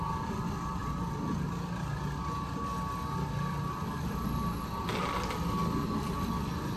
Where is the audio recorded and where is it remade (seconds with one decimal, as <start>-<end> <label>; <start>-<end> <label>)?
0.0-6.8 recorded